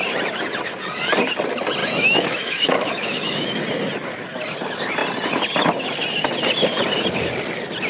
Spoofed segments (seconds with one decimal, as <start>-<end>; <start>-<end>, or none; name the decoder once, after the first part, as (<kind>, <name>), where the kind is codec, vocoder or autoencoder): 1.8-3.6 (autoencoder, DAC-VAE)